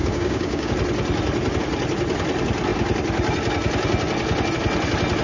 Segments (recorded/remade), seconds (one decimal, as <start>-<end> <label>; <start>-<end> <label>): 0.0-0.7 remade; 0.7-5.2 recorded